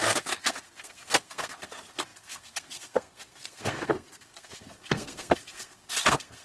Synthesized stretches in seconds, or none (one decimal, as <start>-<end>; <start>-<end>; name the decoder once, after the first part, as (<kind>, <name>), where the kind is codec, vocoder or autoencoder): 0.0-6.4 (codec, SNAC)